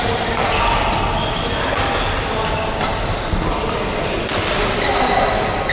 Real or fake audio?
real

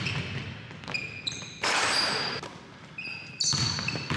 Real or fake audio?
real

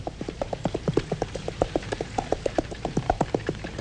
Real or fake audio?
fake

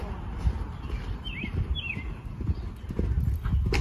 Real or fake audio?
real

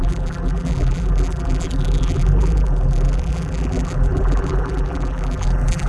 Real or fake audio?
fake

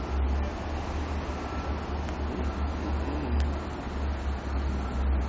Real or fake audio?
real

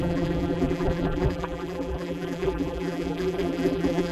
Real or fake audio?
fake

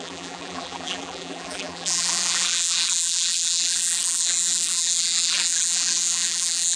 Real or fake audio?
fake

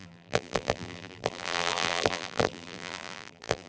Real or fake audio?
fake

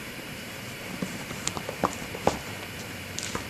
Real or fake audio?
fake